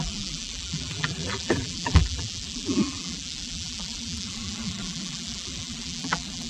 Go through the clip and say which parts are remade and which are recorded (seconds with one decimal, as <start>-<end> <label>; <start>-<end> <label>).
0.0-6.5 remade